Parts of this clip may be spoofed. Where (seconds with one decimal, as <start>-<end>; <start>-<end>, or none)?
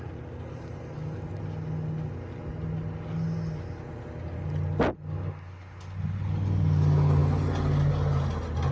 none